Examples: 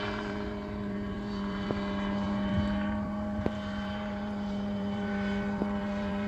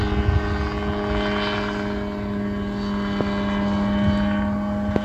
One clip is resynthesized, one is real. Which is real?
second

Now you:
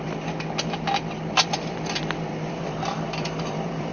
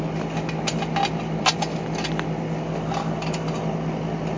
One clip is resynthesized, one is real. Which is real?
second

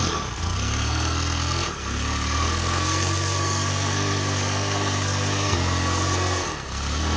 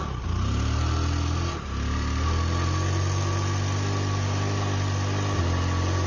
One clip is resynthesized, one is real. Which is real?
second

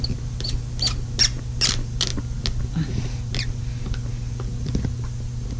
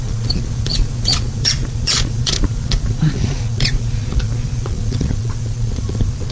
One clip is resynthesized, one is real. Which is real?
first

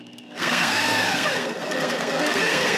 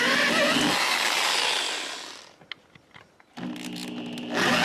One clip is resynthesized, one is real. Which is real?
second